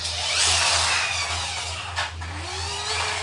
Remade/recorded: recorded